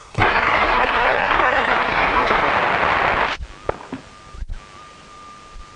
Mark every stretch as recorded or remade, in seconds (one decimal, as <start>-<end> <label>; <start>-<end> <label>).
0.0-2.5 remade; 2.5-5.8 recorded